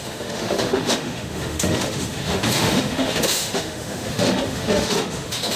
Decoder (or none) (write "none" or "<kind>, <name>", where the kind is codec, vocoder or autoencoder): autoencoder, DAC-VAE